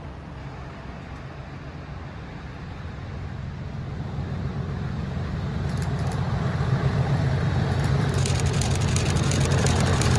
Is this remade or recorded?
recorded